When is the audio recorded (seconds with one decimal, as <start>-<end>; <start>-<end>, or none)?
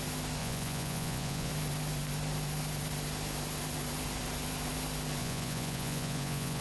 0.0-0.4; 1.5-5.2